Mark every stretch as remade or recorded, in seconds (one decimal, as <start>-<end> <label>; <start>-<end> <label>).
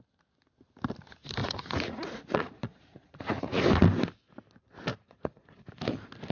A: 0.0-1.4 recorded; 1.4-3.6 remade; 3.6-4.9 recorded; 4.9-5.6 remade; 5.6-6.3 recorded